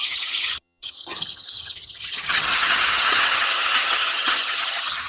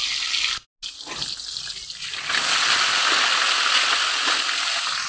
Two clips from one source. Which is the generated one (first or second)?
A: first